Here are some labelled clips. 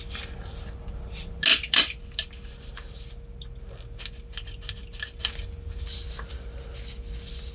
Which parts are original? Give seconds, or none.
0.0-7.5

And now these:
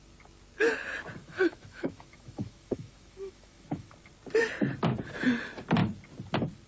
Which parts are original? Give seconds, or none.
0.0-1.2; 3.9-6.7

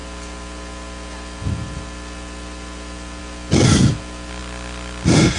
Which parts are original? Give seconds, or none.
0.0-5.4

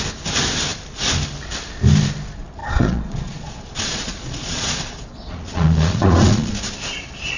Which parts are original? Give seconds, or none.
0.0-2.6; 6.5-7.4

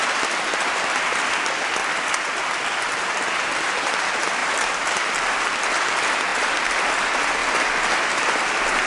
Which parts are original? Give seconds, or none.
1.8-2.8; 7.4-8.0

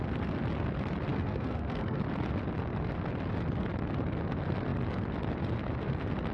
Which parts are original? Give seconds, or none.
0.0-1.1; 2.0-6.3

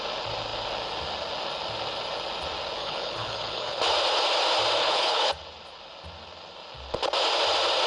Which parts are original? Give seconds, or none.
0.0-2.8; 3.8-4.8; 5.3-7.9